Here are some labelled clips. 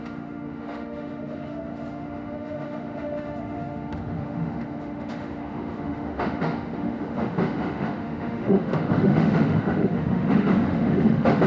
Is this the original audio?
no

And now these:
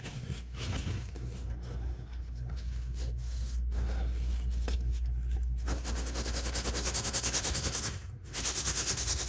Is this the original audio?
no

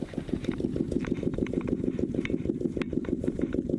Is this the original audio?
no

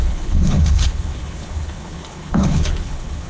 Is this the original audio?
no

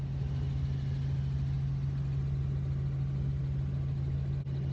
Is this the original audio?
yes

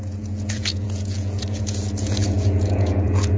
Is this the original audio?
no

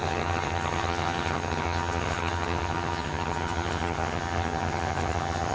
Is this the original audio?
no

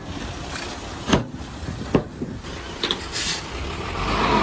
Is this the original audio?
yes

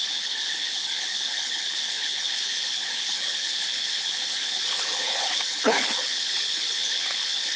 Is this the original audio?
no